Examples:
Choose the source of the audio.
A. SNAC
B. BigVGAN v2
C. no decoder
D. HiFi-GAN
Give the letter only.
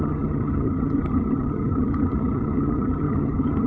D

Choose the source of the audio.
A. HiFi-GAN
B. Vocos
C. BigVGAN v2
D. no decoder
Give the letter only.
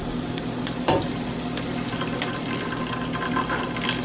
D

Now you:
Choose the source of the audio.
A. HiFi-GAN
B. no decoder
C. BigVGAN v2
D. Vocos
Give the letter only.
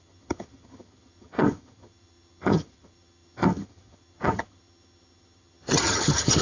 A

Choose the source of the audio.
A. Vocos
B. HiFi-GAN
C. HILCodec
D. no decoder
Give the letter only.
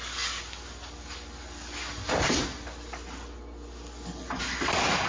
D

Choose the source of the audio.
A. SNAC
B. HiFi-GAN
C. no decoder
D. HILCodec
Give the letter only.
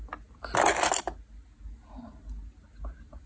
C